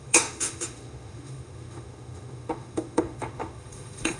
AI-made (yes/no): yes